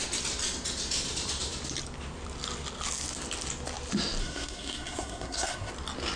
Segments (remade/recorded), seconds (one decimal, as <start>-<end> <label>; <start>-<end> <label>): 0.0-4.2 recorded; 4.2-5.7 remade; 5.7-6.2 recorded